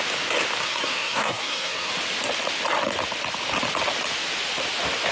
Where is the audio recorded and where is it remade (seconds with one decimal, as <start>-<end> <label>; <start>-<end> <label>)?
0.0-0.6 recorded; 0.6-1.9 remade; 1.9-5.1 recorded